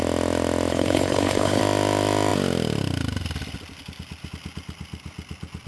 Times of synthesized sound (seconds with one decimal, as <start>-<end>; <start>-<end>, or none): 0.7-1.6